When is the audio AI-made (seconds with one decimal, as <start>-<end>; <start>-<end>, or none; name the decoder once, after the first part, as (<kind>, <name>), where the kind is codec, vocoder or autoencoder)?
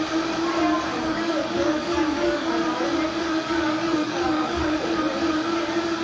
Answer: 0.9-2.5 (codec, DAC); 3.2-5.0